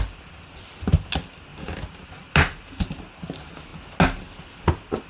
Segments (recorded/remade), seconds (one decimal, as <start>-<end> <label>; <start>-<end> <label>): 0.0-5.1 recorded